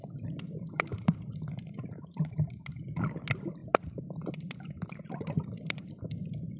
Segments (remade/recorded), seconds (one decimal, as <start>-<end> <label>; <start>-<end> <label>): 0.0-0.9 recorded; 0.9-2.7 remade; 2.7-3.6 recorded; 3.6-6.0 remade; 6.0-6.6 recorded